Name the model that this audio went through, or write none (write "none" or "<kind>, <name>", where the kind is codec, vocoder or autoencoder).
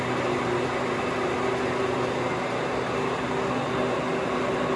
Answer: none